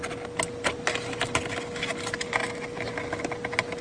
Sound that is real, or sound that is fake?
real